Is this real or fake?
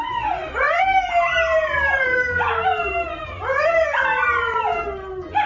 fake